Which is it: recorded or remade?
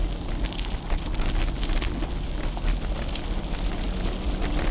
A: recorded